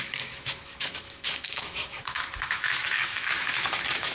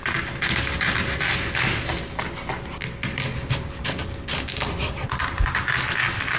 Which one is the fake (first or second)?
first